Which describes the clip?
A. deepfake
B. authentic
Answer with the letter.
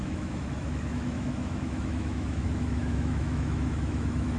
A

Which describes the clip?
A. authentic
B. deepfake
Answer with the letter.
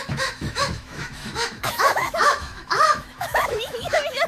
B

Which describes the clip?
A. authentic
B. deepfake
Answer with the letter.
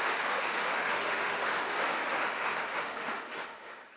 B